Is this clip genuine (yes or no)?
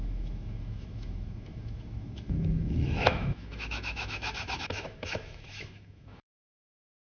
no